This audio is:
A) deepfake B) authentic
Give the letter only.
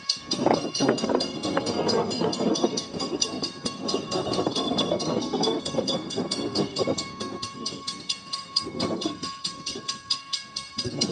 A